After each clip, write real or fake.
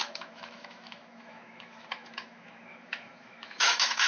fake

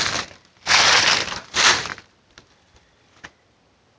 real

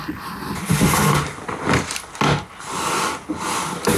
real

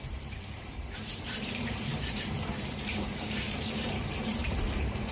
fake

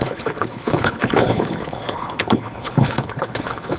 fake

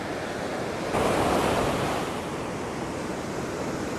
real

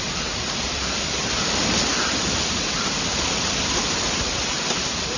fake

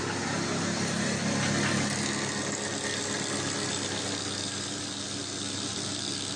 real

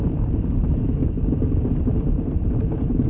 real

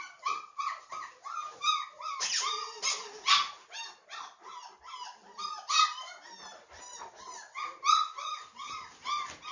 real